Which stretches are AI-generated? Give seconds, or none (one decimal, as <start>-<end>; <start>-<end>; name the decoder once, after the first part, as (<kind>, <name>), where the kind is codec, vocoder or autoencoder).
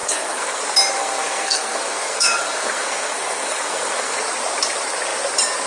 0.0-0.6 (codec, SNAC); 1.0-4.2